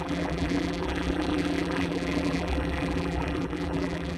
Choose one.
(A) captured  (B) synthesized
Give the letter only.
B